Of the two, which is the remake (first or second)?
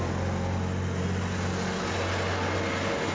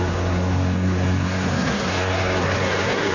second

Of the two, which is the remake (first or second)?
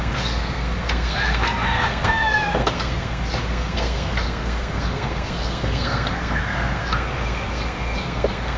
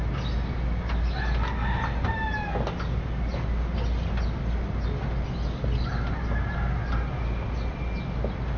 first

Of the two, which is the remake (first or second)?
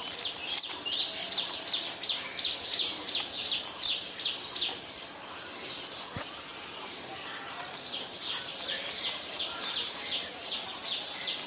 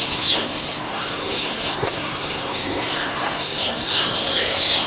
second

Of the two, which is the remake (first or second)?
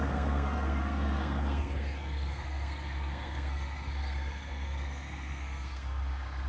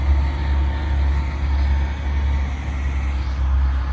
first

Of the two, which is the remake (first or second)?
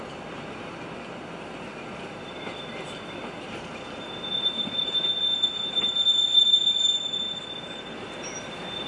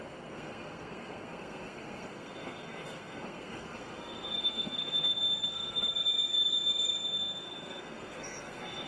second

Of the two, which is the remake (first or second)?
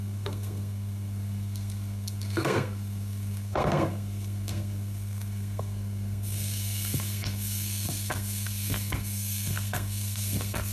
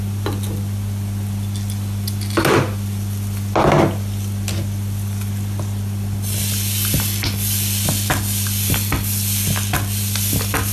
first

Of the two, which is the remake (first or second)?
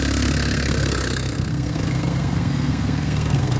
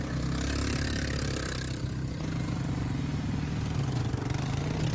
first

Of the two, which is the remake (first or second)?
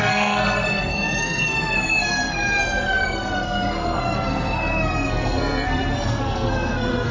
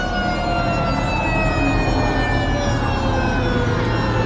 first